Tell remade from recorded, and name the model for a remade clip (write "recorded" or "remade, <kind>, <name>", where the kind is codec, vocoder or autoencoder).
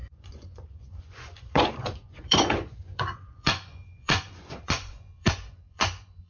remade, vocoder, Vocos